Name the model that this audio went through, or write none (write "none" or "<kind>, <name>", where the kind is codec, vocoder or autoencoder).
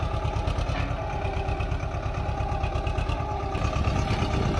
none